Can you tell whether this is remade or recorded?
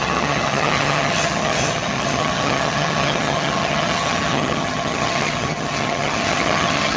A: remade